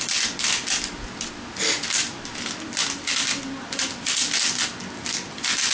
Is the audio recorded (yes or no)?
yes